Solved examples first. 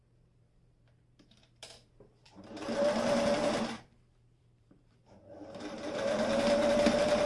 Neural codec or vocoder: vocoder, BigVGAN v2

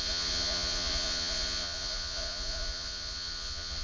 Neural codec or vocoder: vocoder, Vocos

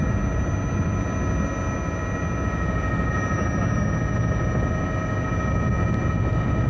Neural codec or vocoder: none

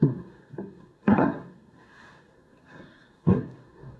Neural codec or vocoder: codec, SNAC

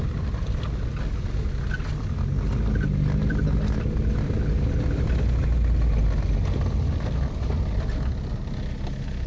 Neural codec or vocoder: none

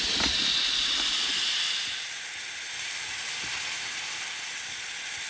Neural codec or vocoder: none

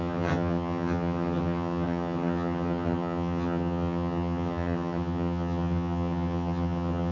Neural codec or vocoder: vocoder, HiFi-GAN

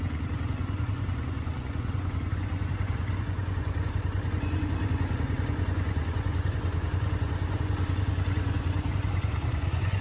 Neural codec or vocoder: vocoder, Vocos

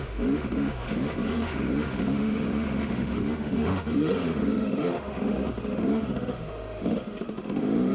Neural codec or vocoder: autoencoder, DAC-VAE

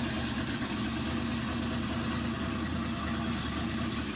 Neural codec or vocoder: none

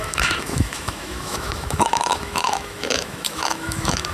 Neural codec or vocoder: autoencoder, DAC-VAE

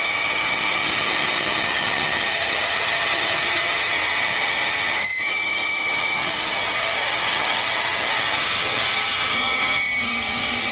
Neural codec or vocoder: vocoder, HiFi-GAN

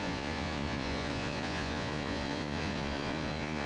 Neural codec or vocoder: vocoder, Vocos